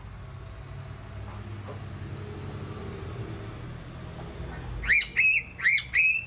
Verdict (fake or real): real